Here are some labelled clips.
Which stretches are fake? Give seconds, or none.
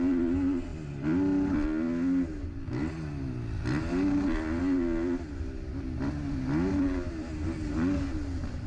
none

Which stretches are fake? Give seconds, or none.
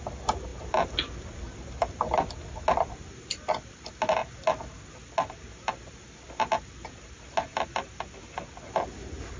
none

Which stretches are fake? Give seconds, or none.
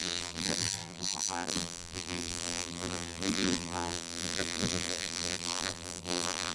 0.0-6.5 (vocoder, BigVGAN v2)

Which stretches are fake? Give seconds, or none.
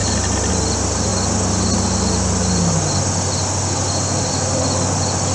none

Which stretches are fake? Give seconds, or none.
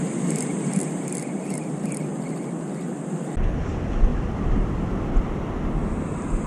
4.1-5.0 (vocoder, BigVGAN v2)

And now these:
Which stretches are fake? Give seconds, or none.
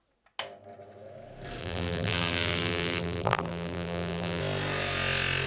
1.6-4.4 (vocoder, BigVGAN v2)